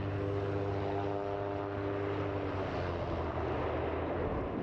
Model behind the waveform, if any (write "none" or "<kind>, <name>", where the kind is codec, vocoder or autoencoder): none